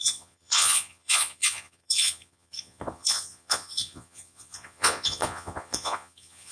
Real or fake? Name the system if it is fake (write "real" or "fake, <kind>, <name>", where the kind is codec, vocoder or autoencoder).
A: fake, vocoder, Vocos